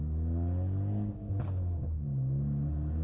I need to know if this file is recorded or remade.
recorded